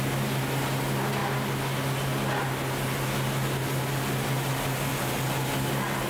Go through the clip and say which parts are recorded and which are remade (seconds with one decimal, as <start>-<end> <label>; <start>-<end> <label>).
0.0-6.1 recorded